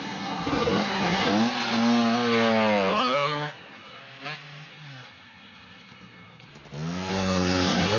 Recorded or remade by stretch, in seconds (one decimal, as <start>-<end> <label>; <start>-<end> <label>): 0.0-1.3 remade; 1.3-2.9 recorded; 2.9-4.0 remade; 4.0-4.7 recorded; 4.7-6.5 remade; 6.5-7.1 recorded; 7.1-8.0 remade